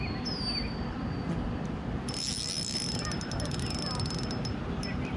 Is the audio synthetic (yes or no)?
no